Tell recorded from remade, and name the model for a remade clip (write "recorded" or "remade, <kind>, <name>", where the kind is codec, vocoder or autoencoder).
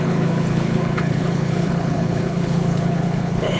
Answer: remade, codec, HILCodec